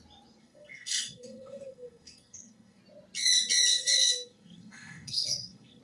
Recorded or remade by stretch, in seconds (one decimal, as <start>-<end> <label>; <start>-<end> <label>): 0.0-0.4 recorded; 0.4-2.8 remade; 2.8-3.7 recorded; 3.7-5.8 remade